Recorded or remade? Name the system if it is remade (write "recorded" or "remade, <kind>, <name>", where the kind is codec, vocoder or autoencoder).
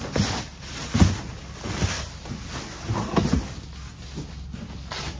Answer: recorded